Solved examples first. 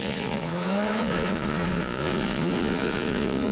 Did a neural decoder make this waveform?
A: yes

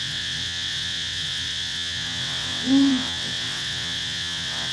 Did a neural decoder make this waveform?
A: yes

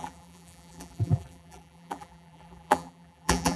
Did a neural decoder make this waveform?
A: yes